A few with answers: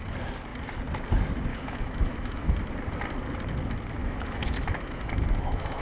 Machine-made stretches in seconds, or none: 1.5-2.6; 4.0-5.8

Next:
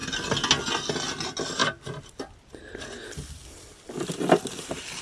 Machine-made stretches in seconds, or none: none